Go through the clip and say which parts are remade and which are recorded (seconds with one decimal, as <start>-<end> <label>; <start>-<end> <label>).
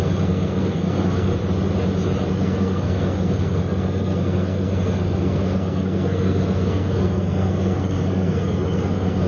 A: 0.0-1.4 remade; 1.4-2.3 recorded; 2.3-9.3 remade